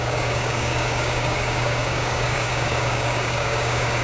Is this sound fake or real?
fake